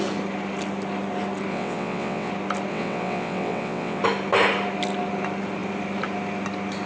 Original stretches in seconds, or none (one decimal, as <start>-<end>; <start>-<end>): 0.0-1.5; 2.3-2.7; 4.0-6.9